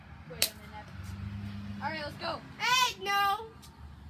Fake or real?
real